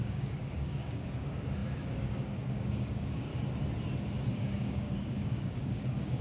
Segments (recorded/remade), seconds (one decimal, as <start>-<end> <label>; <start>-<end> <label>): 0.0-3.3 remade; 3.3-4.3 recorded; 4.3-6.2 remade